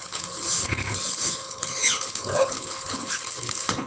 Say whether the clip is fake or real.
fake